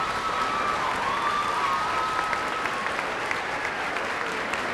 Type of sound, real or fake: real